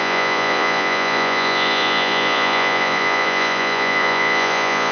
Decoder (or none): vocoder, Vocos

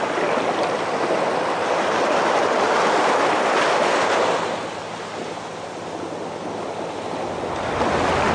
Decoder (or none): none